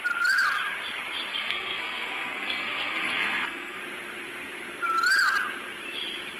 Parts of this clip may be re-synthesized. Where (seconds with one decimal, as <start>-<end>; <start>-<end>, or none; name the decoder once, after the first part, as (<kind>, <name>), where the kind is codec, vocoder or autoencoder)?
1.3-3.8 (codec, SNAC)